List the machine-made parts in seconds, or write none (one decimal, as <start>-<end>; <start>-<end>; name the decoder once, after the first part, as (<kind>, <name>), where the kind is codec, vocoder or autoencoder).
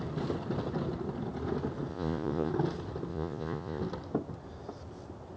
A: 1.9-2.5 (vocoder, Vocos); 3.1-3.8